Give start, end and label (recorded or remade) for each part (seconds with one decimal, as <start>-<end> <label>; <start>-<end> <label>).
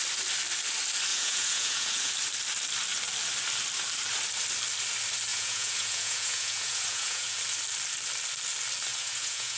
0.0-1.1 recorded; 1.1-2.1 remade; 2.1-5.3 recorded; 5.3-7.4 remade; 7.4-8.9 recorded; 8.9-9.6 remade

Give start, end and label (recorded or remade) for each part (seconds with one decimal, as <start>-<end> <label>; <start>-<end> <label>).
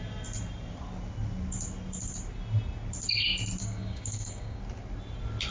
0.0-3.6 recorded; 3.6-4.6 remade; 4.6-5.5 recorded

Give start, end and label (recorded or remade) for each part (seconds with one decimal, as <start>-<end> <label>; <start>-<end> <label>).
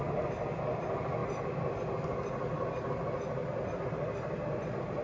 0.0-5.0 recorded